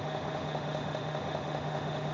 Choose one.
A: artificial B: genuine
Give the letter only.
A